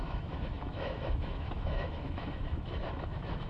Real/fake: fake